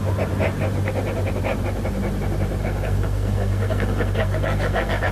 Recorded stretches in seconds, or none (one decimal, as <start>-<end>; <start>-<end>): 0.0-2.6